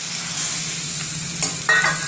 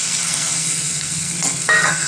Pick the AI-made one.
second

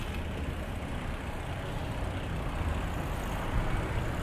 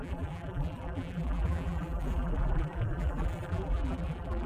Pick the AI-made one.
second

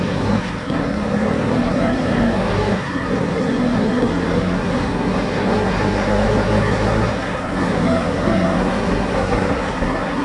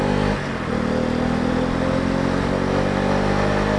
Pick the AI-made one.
first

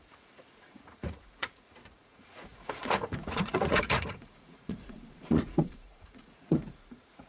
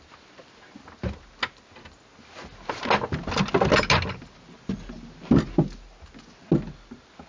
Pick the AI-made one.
first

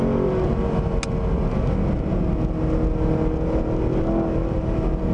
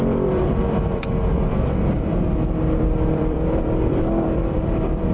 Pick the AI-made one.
second